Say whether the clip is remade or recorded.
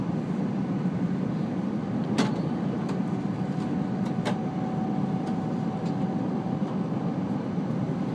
recorded